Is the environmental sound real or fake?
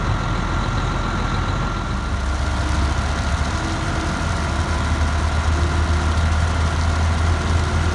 real